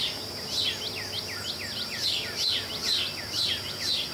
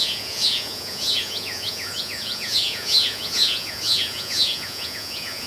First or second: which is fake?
second